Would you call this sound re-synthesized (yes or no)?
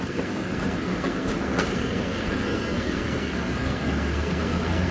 yes